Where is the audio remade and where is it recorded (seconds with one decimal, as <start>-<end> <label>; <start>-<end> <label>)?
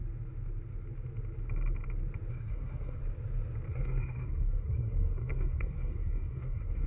0.0-2.3 recorded; 2.3-3.0 remade; 3.0-3.7 recorded; 3.7-6.9 remade